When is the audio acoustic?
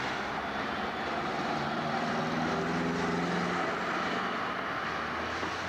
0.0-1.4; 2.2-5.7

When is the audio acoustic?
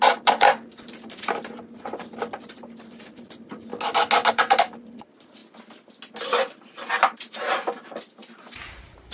3.7-4.3; 5.4-7.0